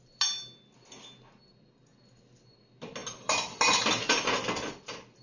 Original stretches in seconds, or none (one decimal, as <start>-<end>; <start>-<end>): 0.0-5.2